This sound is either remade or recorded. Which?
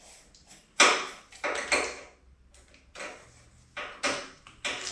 recorded